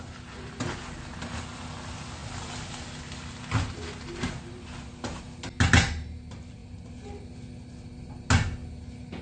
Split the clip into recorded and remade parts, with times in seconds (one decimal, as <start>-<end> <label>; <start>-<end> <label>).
0.0-6.6 recorded; 6.6-7.2 remade; 7.2-9.2 recorded